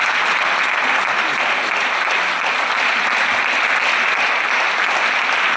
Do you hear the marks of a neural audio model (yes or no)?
no